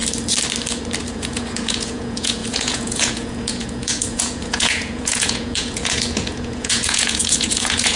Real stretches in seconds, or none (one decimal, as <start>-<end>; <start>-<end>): 0.0-1.1

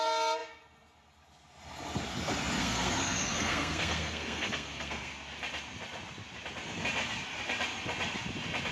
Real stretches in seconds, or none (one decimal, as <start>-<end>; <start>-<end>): 0.0-2.6; 5.1-8.7

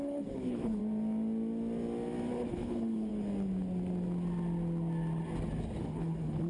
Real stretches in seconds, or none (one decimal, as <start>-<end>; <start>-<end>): 0.8-2.3; 3.1-5.8

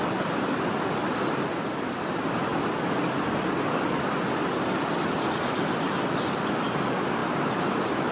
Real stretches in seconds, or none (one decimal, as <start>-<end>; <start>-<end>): 0.0-8.1

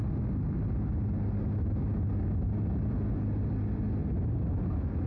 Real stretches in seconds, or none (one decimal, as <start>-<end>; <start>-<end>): 0.0-5.1

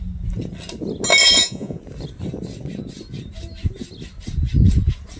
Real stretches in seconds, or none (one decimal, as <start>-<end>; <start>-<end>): 0.0-1.2; 1.8-5.2